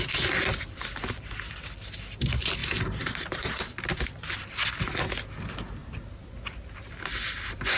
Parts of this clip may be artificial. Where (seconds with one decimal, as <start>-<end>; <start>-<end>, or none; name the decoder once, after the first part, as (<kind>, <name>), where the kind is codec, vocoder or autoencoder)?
2.6-3.6 (vocoder, BigVGAN v2); 5.8-6.9